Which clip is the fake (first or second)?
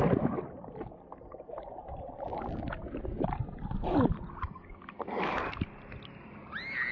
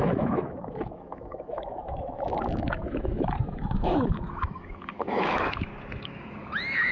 second